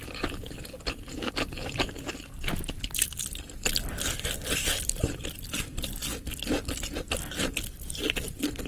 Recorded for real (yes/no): no